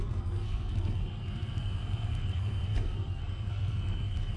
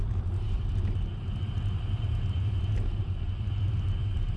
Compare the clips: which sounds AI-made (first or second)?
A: first